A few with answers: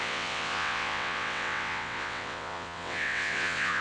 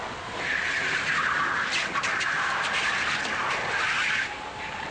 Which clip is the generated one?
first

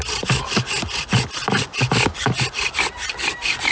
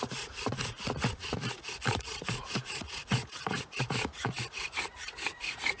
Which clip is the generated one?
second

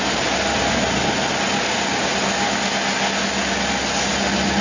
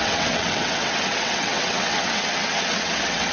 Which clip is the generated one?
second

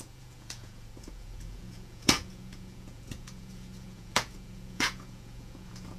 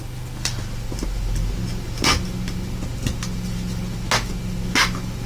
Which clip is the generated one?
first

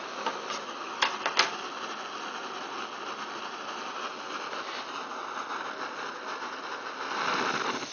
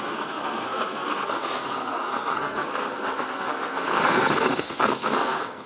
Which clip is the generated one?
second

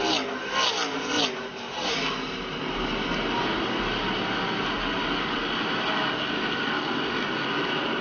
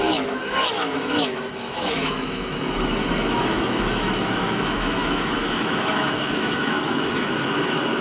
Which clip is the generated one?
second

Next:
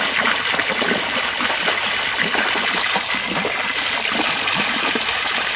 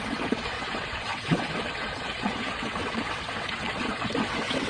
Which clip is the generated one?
second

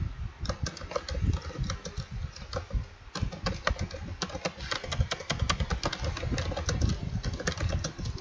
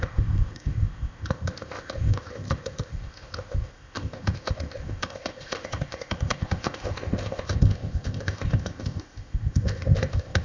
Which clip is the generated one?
second